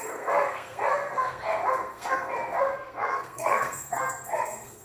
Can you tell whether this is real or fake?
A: fake